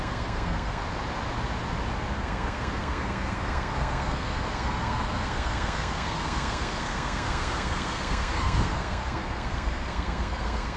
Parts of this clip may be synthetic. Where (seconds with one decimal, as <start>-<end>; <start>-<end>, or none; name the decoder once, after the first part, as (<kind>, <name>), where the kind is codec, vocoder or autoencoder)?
0.0-0.8 (codec, SNAC); 2.0-10.8